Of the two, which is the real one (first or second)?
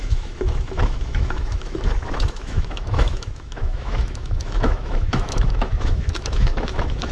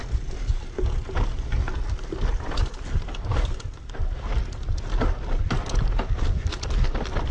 second